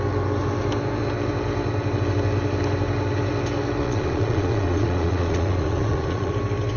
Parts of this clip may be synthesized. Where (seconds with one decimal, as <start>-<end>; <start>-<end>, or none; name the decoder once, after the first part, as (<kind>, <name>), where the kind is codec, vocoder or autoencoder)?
3.8-6.3 (vocoder, Vocos)